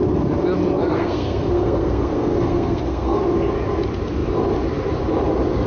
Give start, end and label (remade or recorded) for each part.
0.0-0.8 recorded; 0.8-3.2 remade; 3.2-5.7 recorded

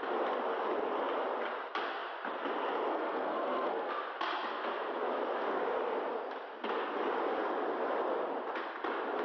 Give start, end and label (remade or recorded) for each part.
0.0-2.9 recorded; 2.9-3.9 remade; 3.9-9.2 recorded